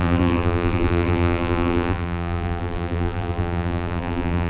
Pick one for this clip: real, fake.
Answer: fake